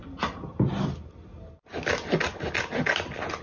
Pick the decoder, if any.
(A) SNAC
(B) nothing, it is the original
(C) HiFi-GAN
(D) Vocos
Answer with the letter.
B